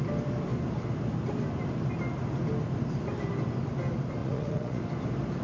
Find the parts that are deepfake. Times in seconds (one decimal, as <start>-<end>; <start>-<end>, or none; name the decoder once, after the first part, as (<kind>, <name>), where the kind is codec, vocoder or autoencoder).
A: 4.2-4.8 (vocoder, Vocos)

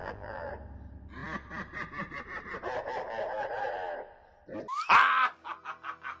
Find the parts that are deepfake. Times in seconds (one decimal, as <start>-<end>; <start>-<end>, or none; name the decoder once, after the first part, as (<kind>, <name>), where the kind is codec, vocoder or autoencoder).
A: 0.0-0.5 (vocoder, BigVGAN v2)

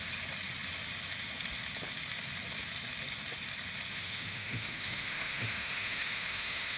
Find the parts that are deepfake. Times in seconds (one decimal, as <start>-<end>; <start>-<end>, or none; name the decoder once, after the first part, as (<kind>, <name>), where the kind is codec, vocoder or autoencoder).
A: 3.9-6.8 (autoencoder, DAC-VAE)

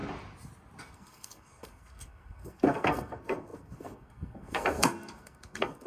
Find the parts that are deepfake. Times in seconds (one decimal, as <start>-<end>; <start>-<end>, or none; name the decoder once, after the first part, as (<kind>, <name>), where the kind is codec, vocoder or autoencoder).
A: 0.8-5.9 (codec, SNAC)